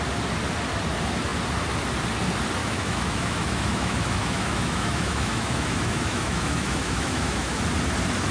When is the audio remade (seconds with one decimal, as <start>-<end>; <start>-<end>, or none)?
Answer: 2.6-7.6